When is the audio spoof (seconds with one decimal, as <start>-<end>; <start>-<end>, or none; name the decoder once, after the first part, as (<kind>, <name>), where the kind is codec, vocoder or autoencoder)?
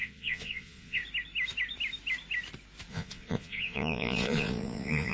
0.0-1.0 (vocoder, Vocos); 2.9-5.1